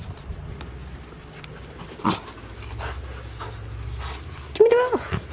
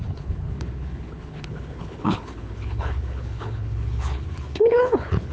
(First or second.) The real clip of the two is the first